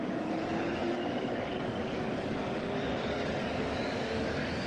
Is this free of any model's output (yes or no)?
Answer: no